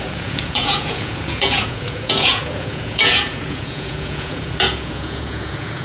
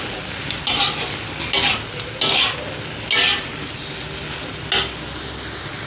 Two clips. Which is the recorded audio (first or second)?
second